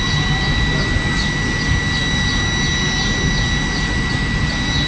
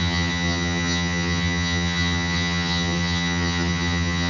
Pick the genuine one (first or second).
first